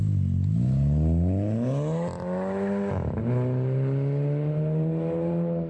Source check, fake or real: real